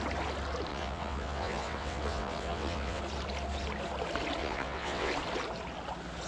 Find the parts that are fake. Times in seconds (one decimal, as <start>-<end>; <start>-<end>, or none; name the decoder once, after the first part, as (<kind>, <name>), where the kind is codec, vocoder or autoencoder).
0.7-3.0 (vocoder, WaveNeXt); 4.4-5.1